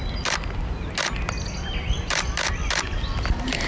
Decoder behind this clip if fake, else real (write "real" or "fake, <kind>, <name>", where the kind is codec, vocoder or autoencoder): real